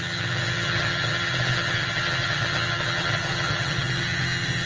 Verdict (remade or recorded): remade